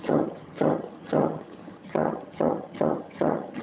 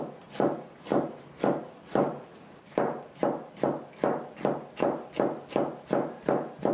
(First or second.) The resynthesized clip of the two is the first